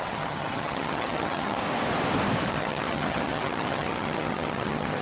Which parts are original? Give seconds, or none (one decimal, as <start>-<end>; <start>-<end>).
1.6-2.5